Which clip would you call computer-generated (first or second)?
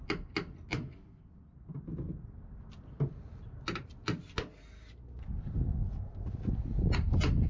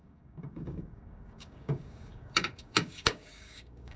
second